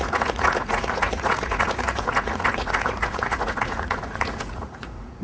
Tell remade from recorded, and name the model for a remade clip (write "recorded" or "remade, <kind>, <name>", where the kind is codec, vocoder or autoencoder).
remade, vocoder, Vocos